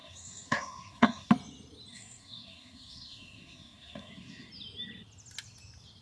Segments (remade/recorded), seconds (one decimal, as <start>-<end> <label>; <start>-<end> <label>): 0.0-1.3 remade; 1.3-1.9 recorded; 1.9-4.5 remade; 4.5-6.0 recorded